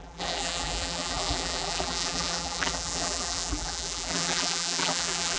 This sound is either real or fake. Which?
fake